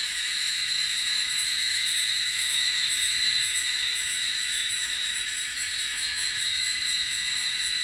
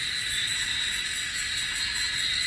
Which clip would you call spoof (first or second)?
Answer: first